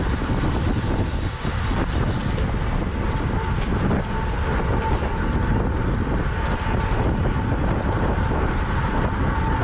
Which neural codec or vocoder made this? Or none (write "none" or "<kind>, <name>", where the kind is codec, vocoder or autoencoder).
none